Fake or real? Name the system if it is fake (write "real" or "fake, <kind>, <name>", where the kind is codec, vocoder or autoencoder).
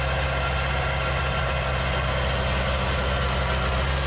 real